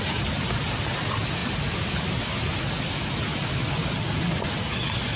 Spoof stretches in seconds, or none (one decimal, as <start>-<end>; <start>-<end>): 3.3-4.0